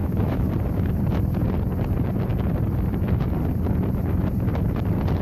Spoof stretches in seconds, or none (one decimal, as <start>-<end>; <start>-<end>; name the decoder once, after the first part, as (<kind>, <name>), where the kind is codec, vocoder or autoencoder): 0.0-0.5 (autoencoder, DAC-VAE)